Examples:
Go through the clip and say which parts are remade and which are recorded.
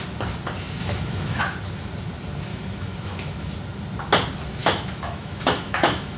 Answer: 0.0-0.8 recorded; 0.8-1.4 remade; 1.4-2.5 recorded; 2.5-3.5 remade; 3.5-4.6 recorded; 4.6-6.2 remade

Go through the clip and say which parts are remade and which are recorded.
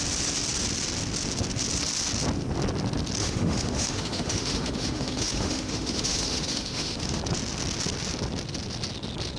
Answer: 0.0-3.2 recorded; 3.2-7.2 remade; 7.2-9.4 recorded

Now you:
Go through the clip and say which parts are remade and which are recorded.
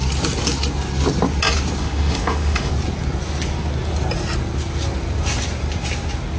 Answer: 0.0-1.8 recorded; 1.8-2.7 remade; 2.7-6.4 recorded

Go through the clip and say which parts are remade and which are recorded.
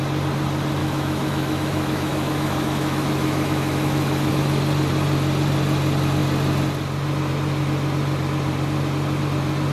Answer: 0.0-0.8 recorded; 0.8-4.3 remade; 4.3-9.7 recorded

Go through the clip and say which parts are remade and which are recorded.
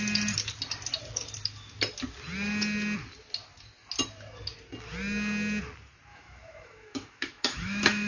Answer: 0.0-6.1 recorded; 6.1-8.1 remade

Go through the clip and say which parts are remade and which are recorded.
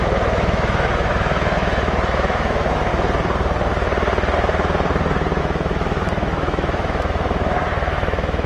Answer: 0.0-2.9 remade; 2.9-5.4 recorded; 5.4-8.5 remade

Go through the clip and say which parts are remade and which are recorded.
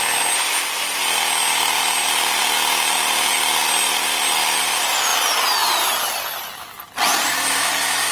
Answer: 0.0-8.1 recorded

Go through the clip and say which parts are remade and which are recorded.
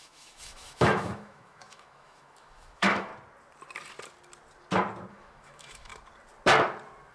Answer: 0.0-3.1 remade; 3.1-5.1 recorded; 5.1-5.9 remade; 5.9-7.1 recorded